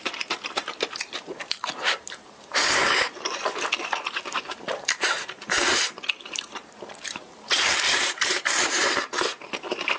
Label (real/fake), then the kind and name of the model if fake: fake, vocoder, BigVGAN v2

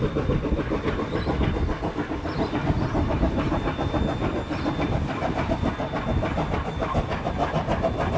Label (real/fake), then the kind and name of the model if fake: real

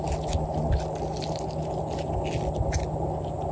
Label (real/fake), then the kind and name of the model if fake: real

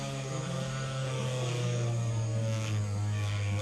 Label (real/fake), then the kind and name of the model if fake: fake, codec, DAC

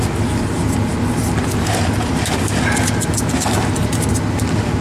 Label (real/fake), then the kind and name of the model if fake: real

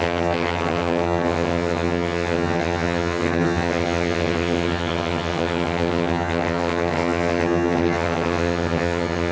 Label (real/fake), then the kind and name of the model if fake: fake, vocoder, HiFi-GAN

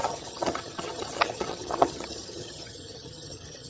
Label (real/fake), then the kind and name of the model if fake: fake, vocoder, HiFi-GAN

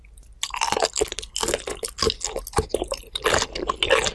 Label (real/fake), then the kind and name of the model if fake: real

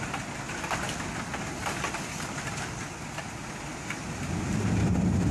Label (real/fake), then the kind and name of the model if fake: real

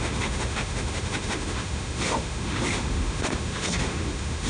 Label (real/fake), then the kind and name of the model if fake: fake, autoencoder, DAC-VAE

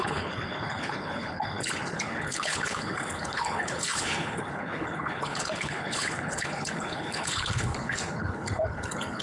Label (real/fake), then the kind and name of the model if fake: fake, codec, HILCodec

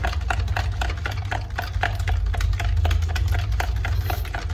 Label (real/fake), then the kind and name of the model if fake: real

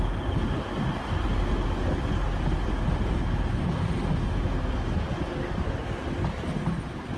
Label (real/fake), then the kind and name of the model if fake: real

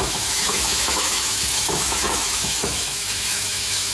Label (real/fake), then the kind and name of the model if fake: fake, autoencoder, DAC-VAE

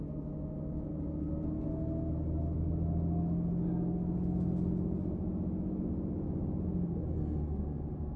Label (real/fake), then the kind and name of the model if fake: real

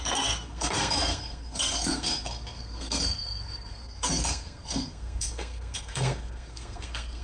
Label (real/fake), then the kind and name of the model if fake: fake, codec, SNAC